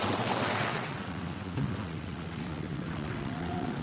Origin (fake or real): fake